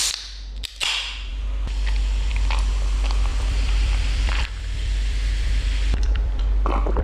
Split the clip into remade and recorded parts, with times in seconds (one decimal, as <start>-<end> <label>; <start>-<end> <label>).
0.0-3.3 recorded; 3.3-6.4 remade; 6.4-7.0 recorded